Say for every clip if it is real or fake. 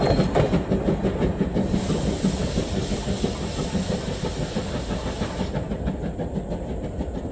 real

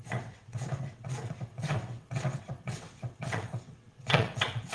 fake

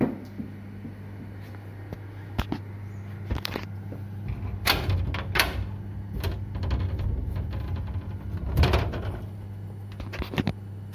real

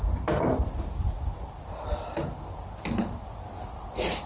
real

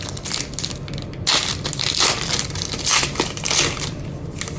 real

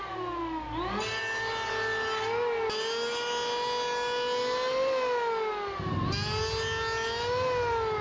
real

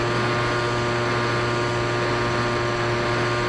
real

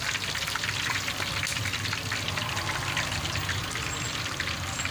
real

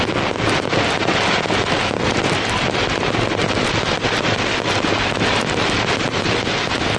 real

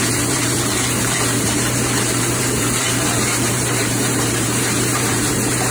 fake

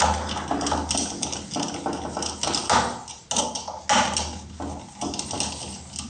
real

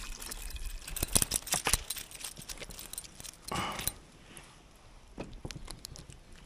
real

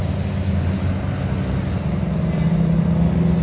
real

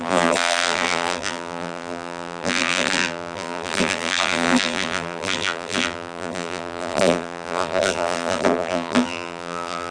fake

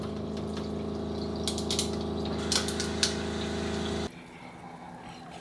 real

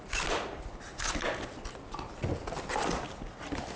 real